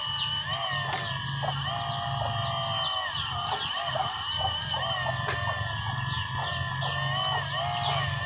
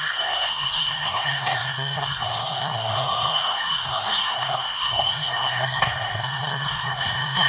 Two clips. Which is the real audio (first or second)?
first